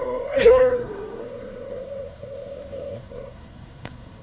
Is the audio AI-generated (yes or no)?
yes